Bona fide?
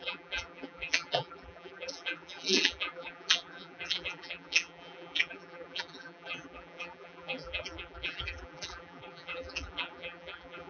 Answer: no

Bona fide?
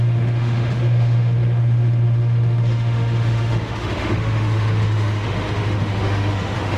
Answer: no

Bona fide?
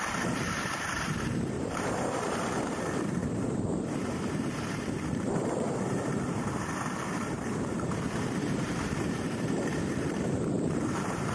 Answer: no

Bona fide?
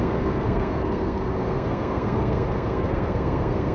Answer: no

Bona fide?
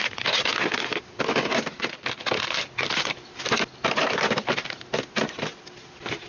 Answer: yes